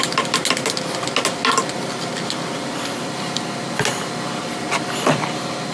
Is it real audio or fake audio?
real